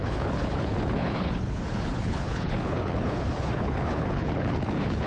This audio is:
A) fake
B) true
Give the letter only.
A